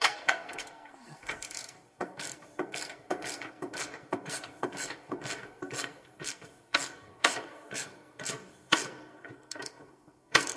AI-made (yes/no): yes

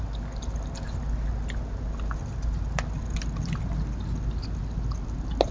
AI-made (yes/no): no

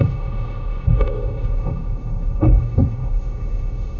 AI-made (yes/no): yes